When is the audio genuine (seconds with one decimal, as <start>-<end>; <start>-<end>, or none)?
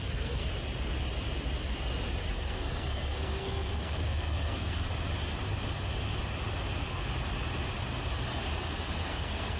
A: 0.5-2.3; 4.9-9.1